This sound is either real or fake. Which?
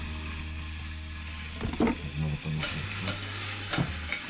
real